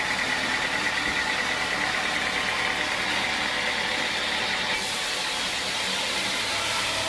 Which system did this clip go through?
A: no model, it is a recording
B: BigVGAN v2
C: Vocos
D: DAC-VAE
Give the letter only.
A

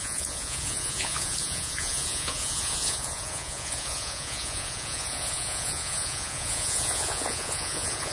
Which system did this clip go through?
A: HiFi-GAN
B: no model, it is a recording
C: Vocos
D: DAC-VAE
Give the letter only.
C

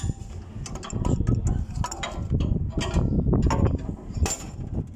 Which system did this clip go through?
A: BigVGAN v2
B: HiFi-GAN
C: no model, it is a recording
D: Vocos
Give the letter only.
C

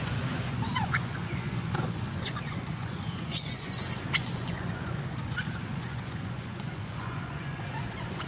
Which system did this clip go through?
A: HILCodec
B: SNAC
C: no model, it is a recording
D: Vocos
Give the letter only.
D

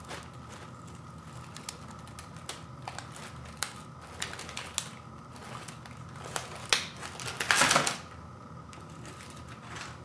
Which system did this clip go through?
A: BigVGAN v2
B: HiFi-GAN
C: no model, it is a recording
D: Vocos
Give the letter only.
C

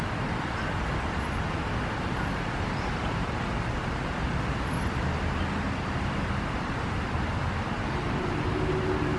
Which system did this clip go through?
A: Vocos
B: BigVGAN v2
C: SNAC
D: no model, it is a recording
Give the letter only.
D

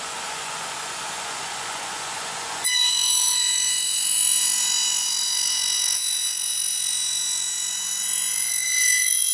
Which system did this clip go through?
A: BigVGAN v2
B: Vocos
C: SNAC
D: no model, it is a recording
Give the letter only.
B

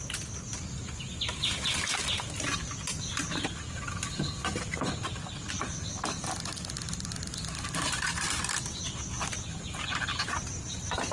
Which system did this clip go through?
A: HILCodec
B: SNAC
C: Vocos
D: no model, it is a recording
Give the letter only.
D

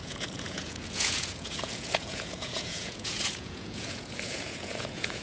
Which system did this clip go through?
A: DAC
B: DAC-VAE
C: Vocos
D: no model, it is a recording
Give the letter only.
C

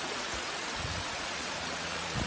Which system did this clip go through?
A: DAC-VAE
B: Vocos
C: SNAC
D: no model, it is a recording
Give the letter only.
B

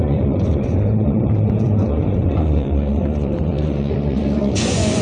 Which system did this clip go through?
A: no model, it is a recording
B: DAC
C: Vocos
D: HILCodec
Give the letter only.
C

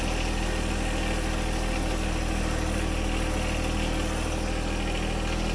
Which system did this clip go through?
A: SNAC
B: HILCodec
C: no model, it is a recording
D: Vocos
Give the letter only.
C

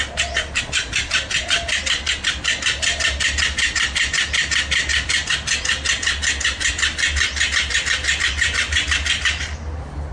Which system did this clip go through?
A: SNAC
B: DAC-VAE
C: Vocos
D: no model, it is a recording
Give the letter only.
D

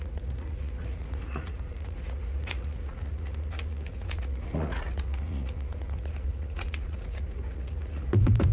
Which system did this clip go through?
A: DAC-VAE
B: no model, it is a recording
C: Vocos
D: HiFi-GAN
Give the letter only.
C